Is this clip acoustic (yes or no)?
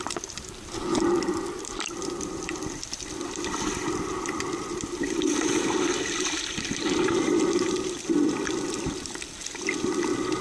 no